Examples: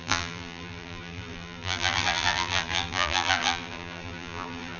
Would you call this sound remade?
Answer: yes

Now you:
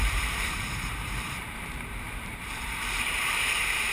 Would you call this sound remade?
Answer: yes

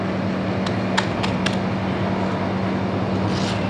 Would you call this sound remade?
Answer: no